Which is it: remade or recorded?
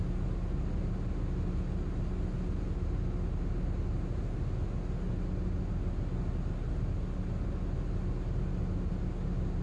recorded